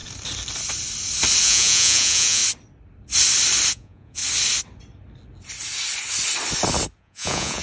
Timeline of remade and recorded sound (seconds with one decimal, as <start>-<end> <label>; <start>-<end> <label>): 0.0-1.4 recorded; 1.4-2.4 remade; 2.4-3.7 recorded; 3.7-4.2 remade; 4.2-7.0 recorded; 7.0-7.6 remade